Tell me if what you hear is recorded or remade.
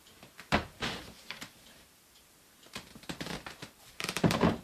remade